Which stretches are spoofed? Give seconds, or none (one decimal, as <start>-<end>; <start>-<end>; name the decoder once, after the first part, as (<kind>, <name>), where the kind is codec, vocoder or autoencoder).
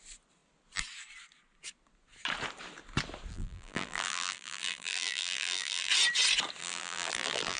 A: 3.3-5.9 (vocoder, BigVGAN v2); 6.6-7.6